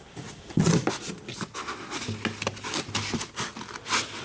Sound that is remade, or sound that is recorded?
recorded